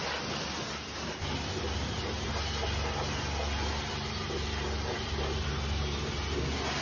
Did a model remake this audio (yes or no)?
no